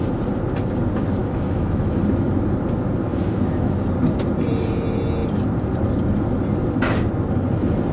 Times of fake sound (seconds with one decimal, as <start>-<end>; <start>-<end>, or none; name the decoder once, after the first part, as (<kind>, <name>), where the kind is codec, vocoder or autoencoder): 1.2-2.0 (autoencoder, DAC-VAE); 3.1-3.7